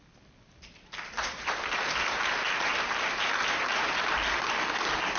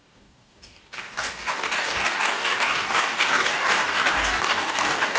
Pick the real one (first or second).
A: first